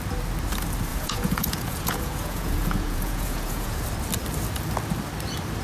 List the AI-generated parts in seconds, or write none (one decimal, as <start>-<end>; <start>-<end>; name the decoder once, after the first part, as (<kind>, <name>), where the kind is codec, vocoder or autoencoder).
0.9-3.8 (vocoder, Vocos)